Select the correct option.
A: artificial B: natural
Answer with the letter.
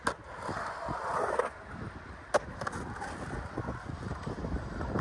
B